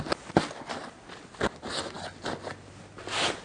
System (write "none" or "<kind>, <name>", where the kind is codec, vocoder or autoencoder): none